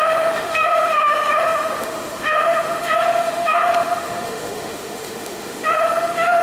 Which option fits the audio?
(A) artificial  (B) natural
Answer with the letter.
A